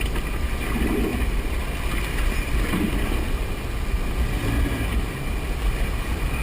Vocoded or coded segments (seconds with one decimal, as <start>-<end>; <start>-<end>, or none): none